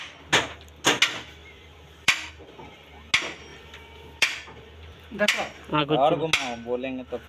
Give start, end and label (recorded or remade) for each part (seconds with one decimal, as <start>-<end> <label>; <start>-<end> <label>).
0.0-1.4 recorded; 1.4-2.3 remade; 2.3-3.5 recorded; 3.5-5.8 remade; 5.8-7.3 recorded